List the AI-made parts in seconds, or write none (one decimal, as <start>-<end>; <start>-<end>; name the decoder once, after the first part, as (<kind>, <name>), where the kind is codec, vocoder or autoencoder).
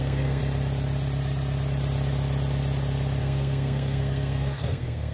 0.0-0.4 (codec, SNAC); 3.2-5.1